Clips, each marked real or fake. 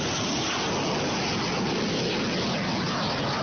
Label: real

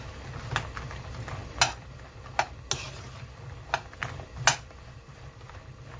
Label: real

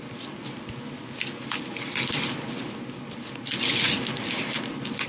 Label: real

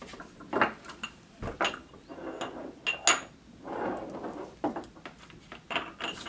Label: real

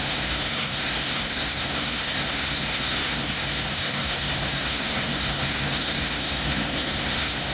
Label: fake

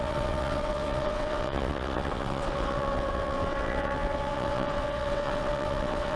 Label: fake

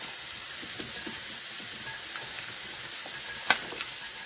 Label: real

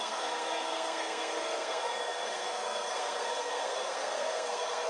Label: fake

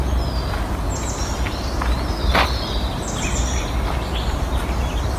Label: real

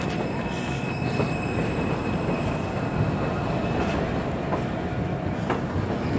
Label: real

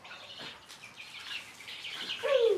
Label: real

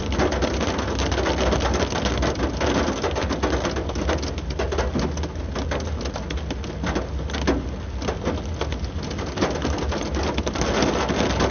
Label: real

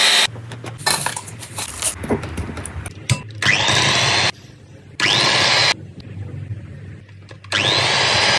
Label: real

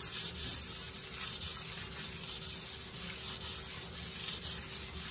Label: real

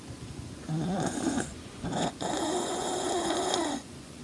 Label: fake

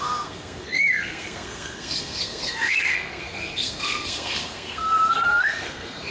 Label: fake